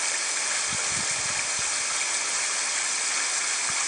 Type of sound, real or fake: real